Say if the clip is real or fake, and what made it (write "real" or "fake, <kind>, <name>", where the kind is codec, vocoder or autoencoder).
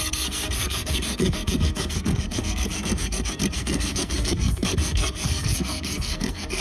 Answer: fake, codec, SNAC